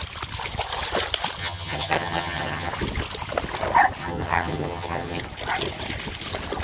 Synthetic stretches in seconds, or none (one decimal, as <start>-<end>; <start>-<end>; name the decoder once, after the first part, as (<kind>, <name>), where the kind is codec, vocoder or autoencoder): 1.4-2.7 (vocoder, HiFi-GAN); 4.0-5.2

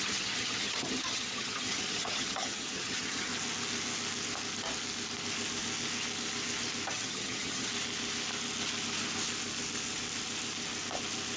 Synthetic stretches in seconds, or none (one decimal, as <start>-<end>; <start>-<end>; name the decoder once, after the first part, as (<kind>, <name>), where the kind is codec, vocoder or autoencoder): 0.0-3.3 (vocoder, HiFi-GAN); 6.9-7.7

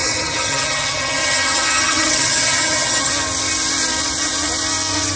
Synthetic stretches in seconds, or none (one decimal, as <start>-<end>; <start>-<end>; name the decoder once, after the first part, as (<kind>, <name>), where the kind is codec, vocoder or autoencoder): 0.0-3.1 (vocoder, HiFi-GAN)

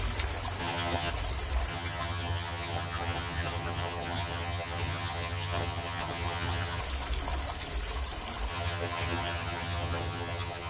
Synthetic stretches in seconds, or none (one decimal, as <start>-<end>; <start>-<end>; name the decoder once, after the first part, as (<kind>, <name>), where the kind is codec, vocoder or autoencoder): 0.6-1.1 (vocoder, HiFi-GAN); 1.7-6.8; 8.5-10.7

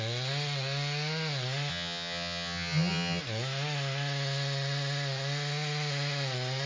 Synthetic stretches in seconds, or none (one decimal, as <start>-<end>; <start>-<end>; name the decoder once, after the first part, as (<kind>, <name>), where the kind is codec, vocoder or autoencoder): 1.7-3.2 (vocoder, HiFi-GAN)